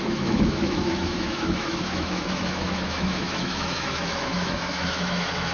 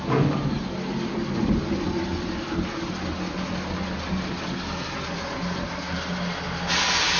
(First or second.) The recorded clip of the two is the second